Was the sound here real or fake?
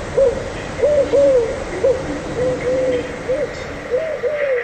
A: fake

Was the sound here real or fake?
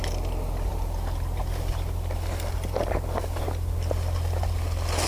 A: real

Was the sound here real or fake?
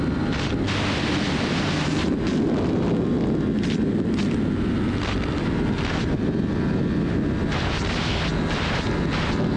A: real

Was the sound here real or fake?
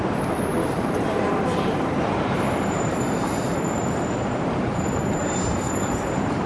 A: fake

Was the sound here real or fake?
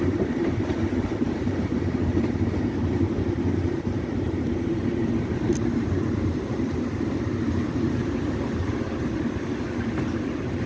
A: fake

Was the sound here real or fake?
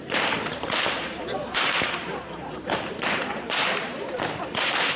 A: fake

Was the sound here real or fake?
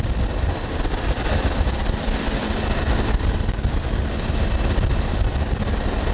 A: fake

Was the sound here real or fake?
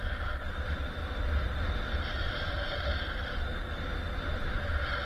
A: real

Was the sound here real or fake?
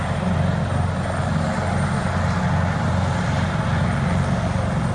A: real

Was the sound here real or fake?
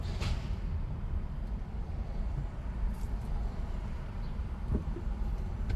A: fake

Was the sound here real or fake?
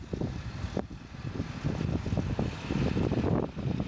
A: real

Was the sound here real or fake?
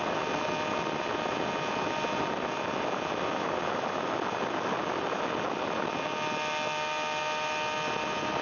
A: real